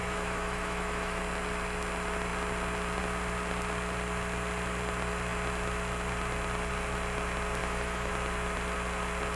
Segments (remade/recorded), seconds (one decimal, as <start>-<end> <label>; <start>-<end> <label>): 0.0-1.2 remade; 1.2-7.6 recorded; 7.6-8.1 remade; 8.1-9.4 recorded